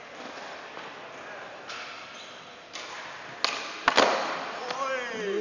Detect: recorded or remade recorded